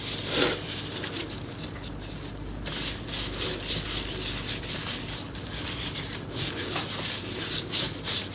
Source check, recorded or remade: recorded